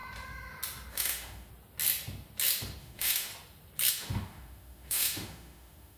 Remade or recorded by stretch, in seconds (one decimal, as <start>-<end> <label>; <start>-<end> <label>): 0.0-0.9 recorded; 0.9-1.5 remade; 1.5-2.8 recorded; 2.8-3.3 remade; 3.3-3.9 recorded; 3.9-6.0 remade